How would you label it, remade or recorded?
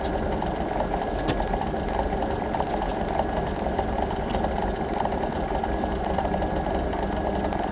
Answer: recorded